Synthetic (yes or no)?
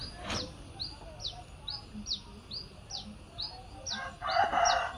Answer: no